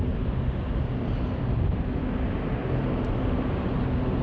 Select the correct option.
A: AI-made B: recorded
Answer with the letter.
A